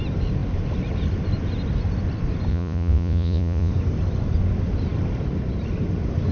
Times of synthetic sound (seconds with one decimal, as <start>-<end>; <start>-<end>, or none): 2.5-3.7